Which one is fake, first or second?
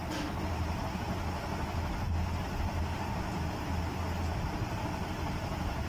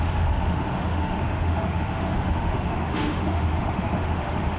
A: second